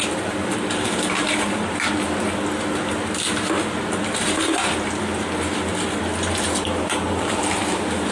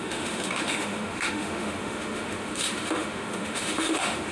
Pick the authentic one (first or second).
first